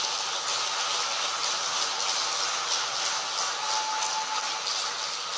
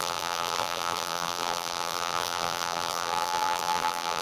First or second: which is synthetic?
second